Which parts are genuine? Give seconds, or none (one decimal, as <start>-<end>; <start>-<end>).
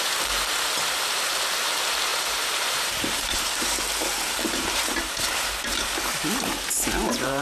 none